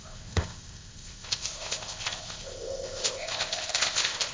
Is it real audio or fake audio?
fake